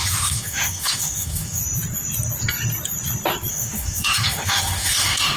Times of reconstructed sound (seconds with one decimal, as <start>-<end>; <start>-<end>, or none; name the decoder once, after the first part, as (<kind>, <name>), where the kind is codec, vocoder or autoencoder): 0.0-1.6 (autoencoder, DAC-VAE); 3.5-5.4